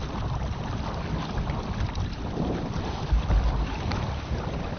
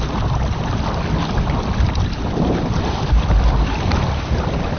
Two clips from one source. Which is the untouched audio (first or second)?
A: second